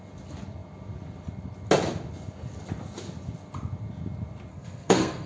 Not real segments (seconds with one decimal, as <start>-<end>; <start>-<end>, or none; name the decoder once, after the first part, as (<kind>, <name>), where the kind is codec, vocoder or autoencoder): 4.5-5.3 (codec, SNAC)